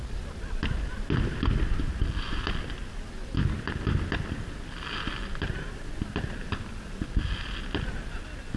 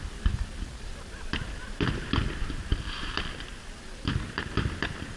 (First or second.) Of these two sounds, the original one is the first